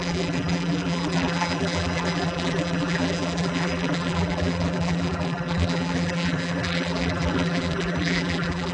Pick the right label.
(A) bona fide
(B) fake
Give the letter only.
B